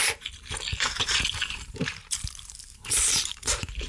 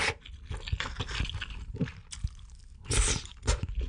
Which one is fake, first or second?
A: first